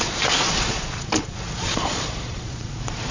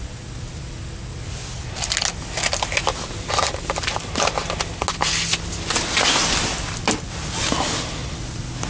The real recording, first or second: second